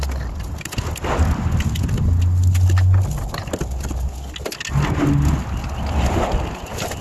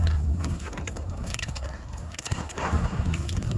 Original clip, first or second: first